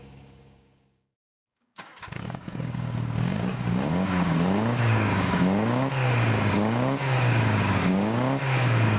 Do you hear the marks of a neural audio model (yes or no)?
yes